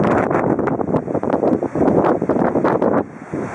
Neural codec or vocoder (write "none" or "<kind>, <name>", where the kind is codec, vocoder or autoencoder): none